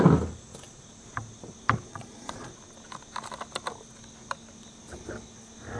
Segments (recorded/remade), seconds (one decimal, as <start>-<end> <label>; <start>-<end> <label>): 0.0-1.9 recorded; 1.9-2.5 remade; 2.5-5.8 recorded

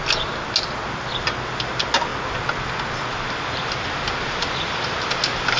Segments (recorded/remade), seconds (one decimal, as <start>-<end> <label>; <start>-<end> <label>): 0.0-5.6 recorded